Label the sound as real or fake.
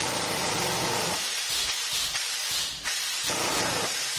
fake